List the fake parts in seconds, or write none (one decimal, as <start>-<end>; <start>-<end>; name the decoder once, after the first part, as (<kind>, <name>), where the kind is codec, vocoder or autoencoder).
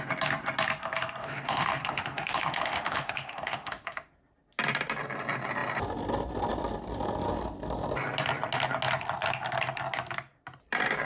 1.2-4.1 (autoencoder, DAC-VAE)